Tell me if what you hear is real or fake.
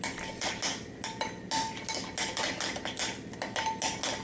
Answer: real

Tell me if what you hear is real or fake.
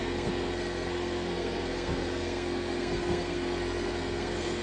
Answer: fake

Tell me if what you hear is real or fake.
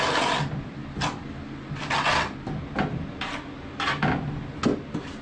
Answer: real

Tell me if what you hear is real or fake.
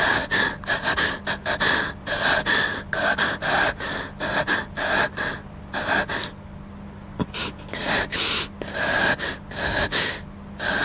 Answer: real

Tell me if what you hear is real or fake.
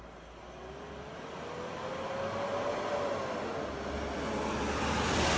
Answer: real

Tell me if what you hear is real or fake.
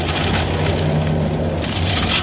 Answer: real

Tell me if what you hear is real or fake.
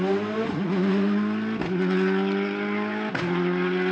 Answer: real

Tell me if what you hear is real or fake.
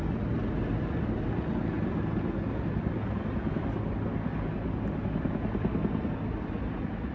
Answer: real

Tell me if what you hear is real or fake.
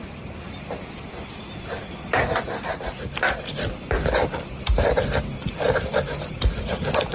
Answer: fake